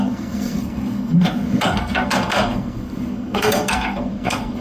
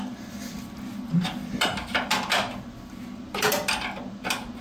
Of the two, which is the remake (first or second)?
first